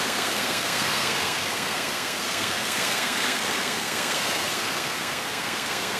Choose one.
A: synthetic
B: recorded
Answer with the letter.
A